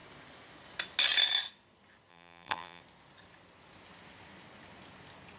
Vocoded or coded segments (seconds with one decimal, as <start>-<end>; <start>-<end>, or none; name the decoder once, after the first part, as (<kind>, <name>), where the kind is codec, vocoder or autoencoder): 2.1-2.8 (vocoder, BigVGAN v2)